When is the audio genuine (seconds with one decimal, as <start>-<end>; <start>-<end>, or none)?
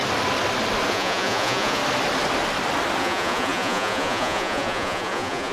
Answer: 0.0-0.9; 1.8-3.0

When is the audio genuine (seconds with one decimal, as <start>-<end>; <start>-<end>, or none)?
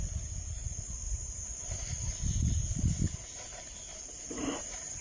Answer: 0.0-5.0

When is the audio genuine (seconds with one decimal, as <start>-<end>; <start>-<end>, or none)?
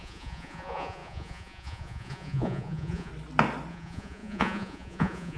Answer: 3.1-3.7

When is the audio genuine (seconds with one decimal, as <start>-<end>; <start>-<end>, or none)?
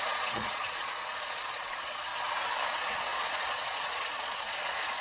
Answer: 2.1-2.7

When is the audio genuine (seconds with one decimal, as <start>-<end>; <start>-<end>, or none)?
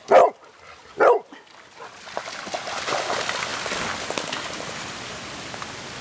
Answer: 0.0-6.0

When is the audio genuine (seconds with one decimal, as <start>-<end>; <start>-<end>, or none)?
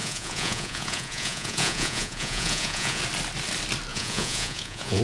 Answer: 3.0-3.9